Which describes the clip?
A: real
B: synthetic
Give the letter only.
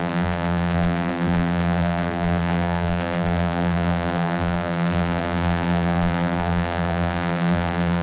B